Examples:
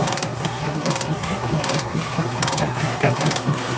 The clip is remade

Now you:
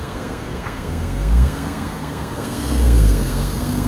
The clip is remade